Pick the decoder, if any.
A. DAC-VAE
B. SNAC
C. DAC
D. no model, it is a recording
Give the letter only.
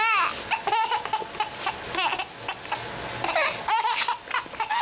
D